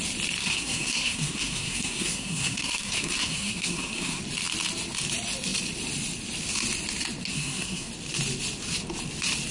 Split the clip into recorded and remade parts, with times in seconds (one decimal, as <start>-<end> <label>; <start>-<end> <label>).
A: 0.0-0.4 recorded; 0.4-4.2 remade; 4.2-7.3 recorded; 7.3-7.9 remade; 7.9-9.5 recorded